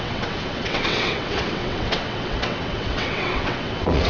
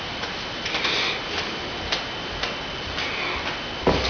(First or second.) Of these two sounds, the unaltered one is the second